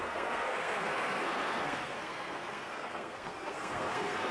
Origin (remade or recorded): remade